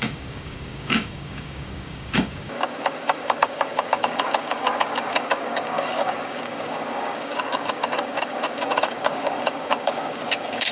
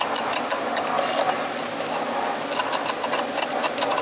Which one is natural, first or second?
second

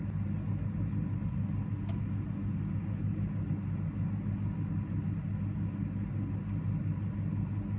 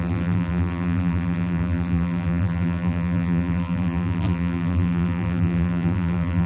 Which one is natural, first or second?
first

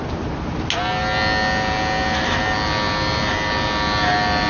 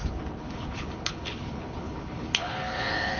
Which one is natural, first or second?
first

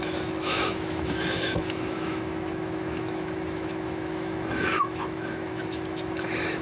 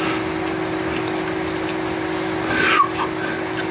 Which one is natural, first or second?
second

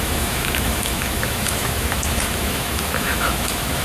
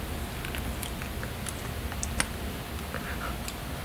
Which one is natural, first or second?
second